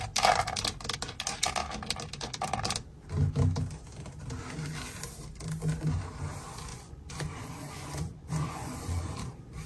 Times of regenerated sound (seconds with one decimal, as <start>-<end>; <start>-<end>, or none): 6.7-9.2